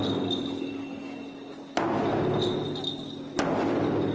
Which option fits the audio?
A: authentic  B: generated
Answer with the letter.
A